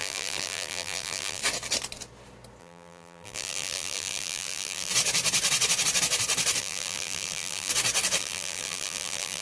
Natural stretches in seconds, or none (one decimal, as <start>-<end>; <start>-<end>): 1.4-2.6; 4.9-6.6; 7.7-8.2